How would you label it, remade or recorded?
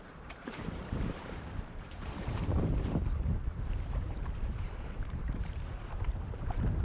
remade